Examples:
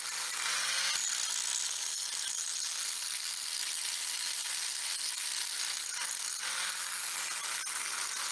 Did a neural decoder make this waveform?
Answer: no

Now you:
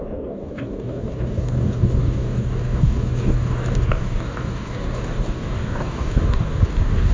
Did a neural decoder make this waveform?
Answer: yes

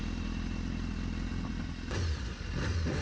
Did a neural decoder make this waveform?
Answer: no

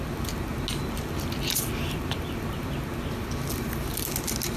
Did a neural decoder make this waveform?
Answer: no